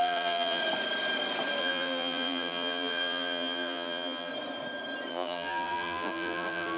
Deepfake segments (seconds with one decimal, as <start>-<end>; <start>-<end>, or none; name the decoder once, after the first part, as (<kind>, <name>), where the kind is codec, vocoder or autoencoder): 0.0-0.6 (vocoder, BigVGAN v2); 1.6-4.3; 5.1-6.8